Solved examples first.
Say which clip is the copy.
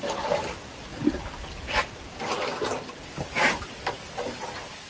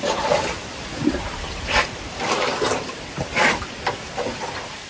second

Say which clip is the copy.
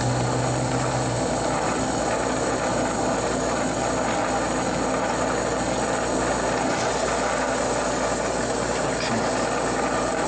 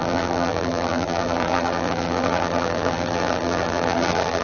second